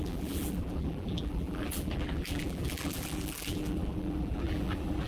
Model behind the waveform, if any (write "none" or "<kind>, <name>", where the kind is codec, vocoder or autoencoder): vocoder, BigVGAN v2